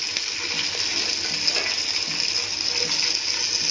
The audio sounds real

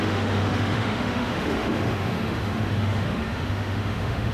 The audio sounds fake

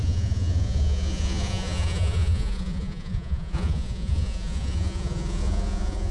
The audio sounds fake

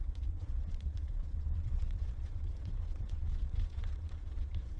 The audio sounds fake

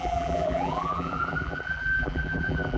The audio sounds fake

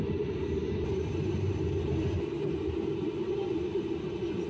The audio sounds fake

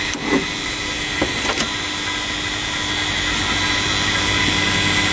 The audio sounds real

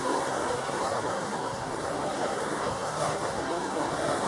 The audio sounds fake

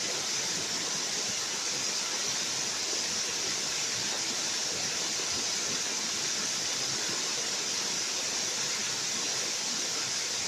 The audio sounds real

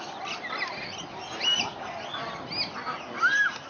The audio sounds real